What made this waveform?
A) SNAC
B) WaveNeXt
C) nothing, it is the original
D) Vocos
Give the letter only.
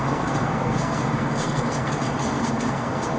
A